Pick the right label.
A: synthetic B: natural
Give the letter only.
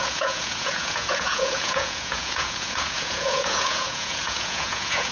A